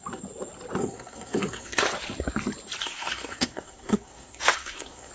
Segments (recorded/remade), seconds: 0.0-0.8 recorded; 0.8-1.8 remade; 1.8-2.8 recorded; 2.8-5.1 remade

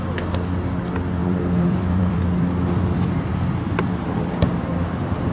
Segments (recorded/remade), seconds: 0.0-1.2 recorded; 1.2-4.4 remade; 4.4-5.3 recorded

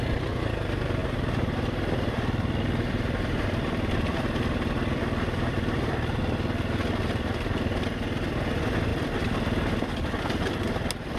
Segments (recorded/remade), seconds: 0.0-1.0 recorded; 1.0-6.2 remade; 6.2-8.9 recorded; 8.9-10.2 remade; 10.2-11.2 recorded

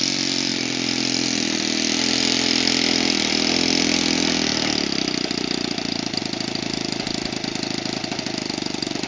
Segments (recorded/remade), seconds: 0.0-9.1 recorded

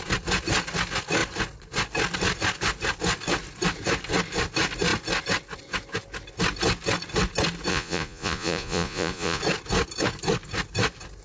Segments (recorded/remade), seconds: 0.0-7.7 recorded; 7.7-9.4 remade; 9.4-11.2 recorded